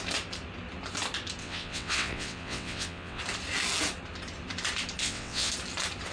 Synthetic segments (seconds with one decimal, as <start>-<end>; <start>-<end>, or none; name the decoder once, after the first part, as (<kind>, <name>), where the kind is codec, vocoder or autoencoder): 1.4-3.2 (vocoder, WaveNeXt); 5.0-5.5